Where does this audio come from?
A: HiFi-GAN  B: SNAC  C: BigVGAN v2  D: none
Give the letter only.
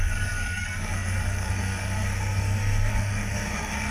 B